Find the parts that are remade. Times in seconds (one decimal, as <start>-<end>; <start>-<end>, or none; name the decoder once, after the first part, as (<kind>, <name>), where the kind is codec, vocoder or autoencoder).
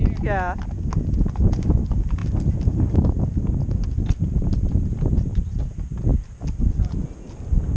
6.1-7.0 (vocoder, BigVGAN v2)